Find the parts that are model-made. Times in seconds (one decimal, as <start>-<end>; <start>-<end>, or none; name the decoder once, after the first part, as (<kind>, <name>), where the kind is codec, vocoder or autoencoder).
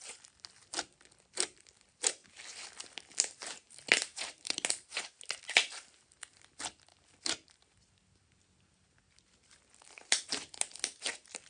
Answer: none